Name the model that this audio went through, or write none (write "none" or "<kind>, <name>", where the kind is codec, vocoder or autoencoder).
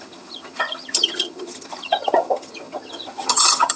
vocoder, HiFi-GAN